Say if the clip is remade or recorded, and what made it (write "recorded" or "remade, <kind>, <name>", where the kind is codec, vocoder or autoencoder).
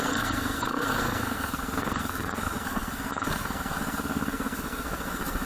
remade, codec, SNAC